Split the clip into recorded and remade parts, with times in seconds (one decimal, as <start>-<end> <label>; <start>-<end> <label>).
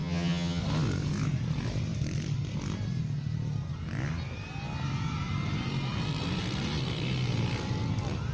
0.0-0.6 remade; 0.6-8.3 recorded